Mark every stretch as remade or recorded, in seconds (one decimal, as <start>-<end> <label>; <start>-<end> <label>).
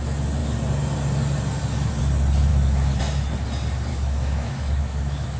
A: 0.0-2.5 recorded; 2.5-3.0 remade; 3.0-3.9 recorded; 3.9-5.4 remade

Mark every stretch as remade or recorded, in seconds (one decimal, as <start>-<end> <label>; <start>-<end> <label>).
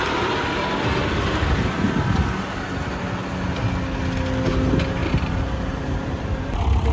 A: 0.0-5.0 recorded; 5.0-6.4 remade; 6.4-6.9 recorded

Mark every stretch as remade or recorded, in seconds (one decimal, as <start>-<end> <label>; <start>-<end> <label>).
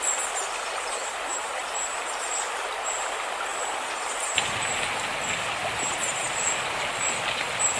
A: 0.0-5.6 recorded; 5.6-6.2 remade; 6.2-7.8 recorded